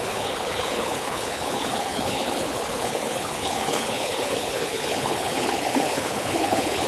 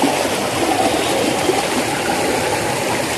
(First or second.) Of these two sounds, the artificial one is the first